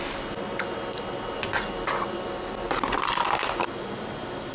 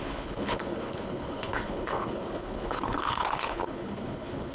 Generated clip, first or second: second